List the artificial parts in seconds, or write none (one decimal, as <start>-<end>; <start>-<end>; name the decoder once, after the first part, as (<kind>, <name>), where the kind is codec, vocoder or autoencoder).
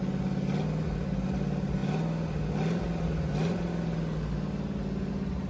none